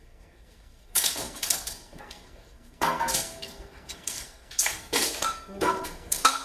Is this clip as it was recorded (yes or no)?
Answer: no